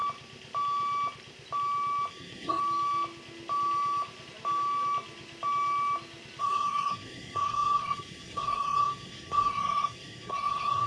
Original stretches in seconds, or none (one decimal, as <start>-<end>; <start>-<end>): 0.0-2.1; 2.6-6.4

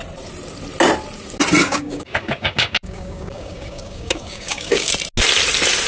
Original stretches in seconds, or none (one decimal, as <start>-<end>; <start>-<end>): 0.0-1.6; 4.9-5.9

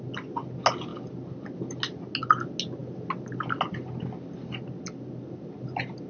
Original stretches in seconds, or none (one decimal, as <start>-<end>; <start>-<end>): 0.0-6.1

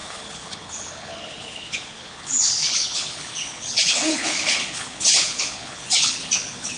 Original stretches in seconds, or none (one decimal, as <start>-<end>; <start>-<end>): none

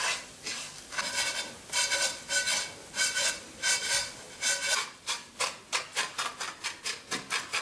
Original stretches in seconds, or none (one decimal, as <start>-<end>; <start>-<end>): 0.0-2.8; 3.3-7.6

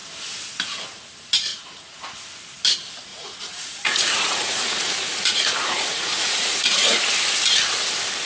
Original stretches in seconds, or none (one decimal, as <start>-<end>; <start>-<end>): 0.0-1.5; 2.0-3.1; 7.1-8.3